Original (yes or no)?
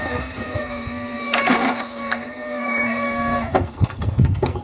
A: no